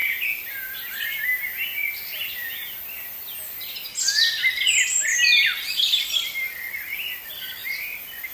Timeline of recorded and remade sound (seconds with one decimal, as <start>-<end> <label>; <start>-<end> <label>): 0.0-8.3 recorded